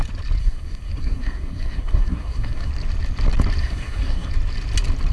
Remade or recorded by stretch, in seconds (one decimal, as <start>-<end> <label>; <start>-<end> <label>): 0.0-0.4 recorded; 0.4-2.7 remade; 2.7-3.6 recorded; 3.6-4.3 remade; 4.3-5.1 recorded

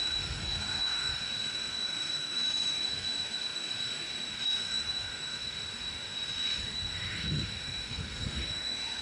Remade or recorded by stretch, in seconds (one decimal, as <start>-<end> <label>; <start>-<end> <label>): 0.0-9.0 remade

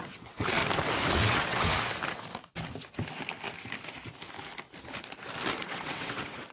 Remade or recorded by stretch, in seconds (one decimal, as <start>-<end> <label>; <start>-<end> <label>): 0.0-0.6 remade; 0.6-1.1 recorded; 1.1-1.7 remade; 1.7-5.6 recorded; 5.6-6.5 remade

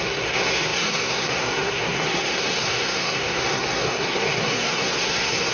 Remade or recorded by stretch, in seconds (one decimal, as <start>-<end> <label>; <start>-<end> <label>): 0.0-5.5 remade

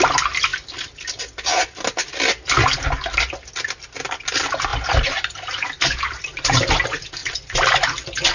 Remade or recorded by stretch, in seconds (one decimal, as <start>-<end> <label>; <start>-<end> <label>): 0.0-4.7 recorded; 4.7-6.7 remade; 6.7-7.2 recorded; 7.2-7.9 remade; 7.9-8.3 recorded